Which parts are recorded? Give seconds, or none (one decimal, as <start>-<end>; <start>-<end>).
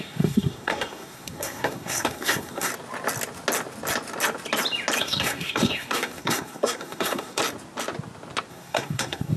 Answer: 2.7-5.0; 7.4-8.5